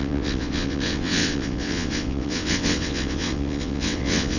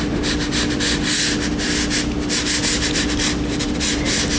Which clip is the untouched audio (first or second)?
second